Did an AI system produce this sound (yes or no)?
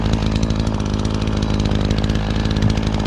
no